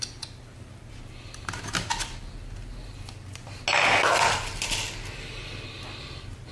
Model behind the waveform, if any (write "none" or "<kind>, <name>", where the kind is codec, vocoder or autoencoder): none